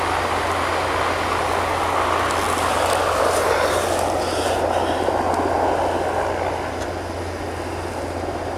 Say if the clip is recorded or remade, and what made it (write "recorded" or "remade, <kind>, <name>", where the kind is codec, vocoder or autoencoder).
recorded